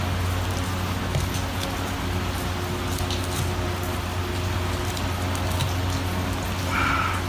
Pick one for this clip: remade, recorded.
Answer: recorded